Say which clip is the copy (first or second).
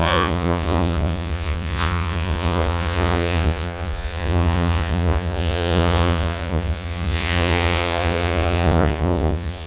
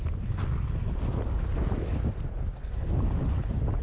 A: first